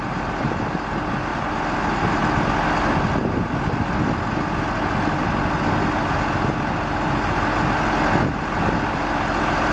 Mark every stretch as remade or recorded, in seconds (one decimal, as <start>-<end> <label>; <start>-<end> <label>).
0.0-1.3 recorded; 1.3-1.8 remade; 1.8-9.7 recorded